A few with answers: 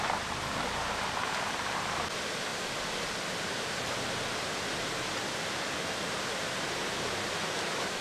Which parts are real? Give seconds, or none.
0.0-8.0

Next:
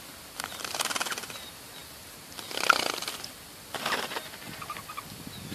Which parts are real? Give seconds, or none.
0.0-5.5

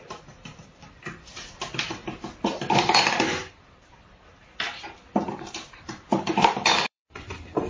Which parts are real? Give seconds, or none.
none

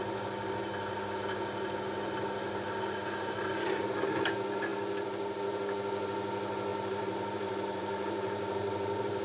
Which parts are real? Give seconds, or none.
0.0-6.7

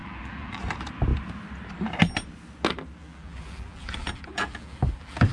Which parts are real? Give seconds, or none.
0.6-3.0

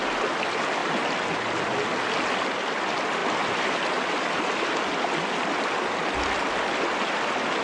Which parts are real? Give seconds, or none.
0.0-0.8; 1.9-3.2; 4.4-7.6

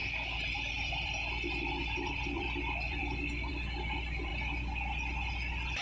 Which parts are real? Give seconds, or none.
3.5-5.8

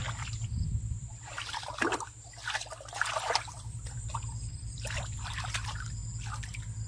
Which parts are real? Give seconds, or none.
6.0-6.9